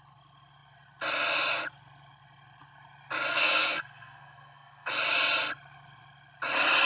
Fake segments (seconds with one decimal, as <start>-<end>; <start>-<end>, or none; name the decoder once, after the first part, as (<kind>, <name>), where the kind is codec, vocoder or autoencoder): 3.3-4.9 (codec, SNAC)